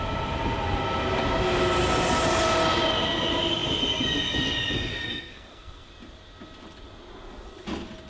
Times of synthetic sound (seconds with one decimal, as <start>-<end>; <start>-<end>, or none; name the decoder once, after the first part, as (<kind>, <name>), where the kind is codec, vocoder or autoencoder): 4.9-5.9 (codec, SNAC)